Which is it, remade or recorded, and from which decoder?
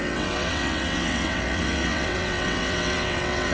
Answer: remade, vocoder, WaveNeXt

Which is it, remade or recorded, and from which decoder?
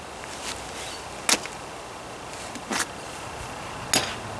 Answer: recorded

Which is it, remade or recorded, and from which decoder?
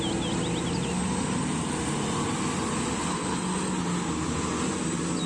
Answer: recorded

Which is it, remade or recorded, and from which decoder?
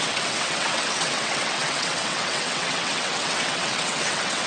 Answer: remade, vocoder, WaveNeXt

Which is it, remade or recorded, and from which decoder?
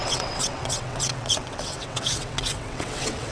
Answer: remade, vocoder, WaveNeXt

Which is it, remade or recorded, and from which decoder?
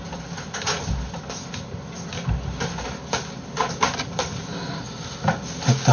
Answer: recorded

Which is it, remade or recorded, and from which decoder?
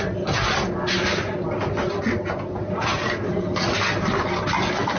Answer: recorded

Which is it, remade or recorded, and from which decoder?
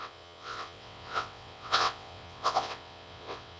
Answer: remade, vocoder, WaveNeXt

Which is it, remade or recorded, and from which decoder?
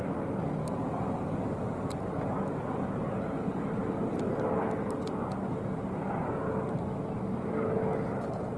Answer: recorded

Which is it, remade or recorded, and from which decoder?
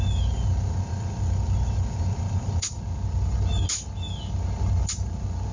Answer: recorded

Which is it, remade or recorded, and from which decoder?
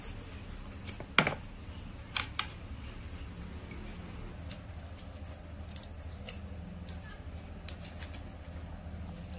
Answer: recorded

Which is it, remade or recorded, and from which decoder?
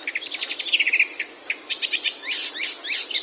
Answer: recorded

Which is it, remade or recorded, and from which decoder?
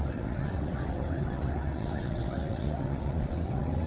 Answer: remade, vocoder, WaveNeXt